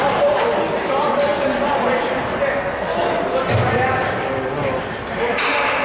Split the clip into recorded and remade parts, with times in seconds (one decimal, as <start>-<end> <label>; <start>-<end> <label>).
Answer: 0.0-5.8 recorded